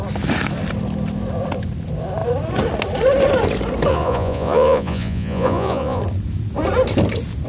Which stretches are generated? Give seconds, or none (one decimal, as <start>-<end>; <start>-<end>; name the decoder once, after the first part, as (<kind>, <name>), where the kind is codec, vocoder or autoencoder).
3.9-6.0 (vocoder, Vocos)